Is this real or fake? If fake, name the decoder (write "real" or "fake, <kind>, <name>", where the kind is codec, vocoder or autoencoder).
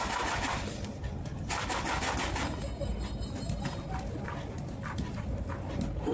real